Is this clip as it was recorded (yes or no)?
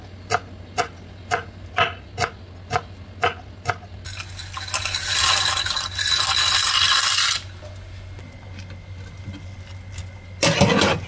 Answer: yes